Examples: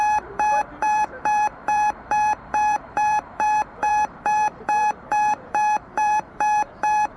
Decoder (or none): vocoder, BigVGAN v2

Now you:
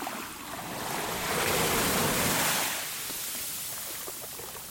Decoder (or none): none